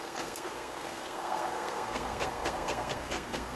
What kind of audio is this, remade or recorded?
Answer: remade